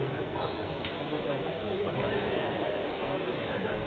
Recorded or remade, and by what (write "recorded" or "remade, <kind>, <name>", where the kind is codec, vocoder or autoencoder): remade, codec, SNAC